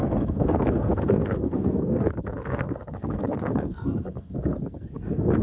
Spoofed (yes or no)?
yes